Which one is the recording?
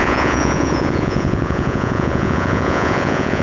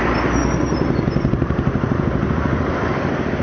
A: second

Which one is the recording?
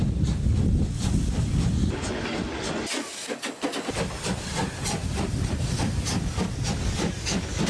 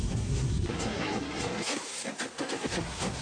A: first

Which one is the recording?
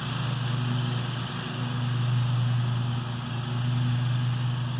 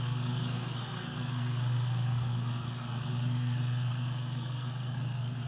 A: first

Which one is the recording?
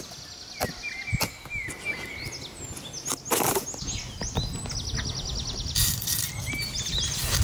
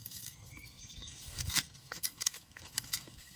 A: first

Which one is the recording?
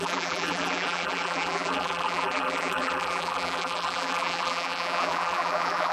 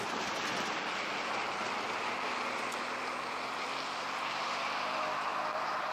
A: second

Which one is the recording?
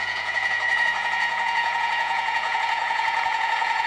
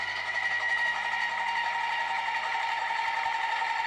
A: second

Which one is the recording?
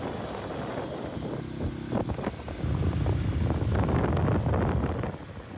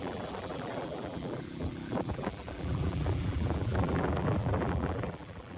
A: first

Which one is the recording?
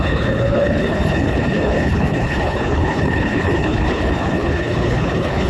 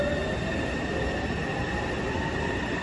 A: second